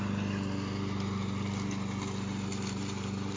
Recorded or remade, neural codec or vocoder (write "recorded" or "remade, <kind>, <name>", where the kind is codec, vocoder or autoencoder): recorded